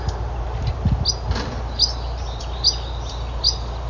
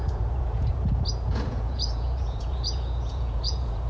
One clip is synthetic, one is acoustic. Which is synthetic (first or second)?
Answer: second